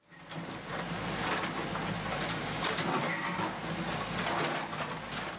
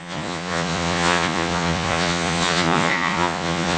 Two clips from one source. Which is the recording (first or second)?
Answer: first